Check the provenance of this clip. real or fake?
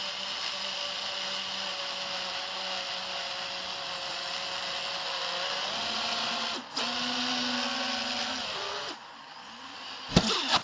real